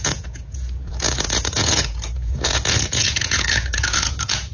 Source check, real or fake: fake